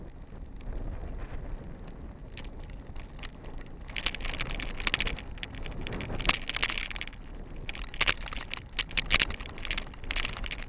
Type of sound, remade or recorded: recorded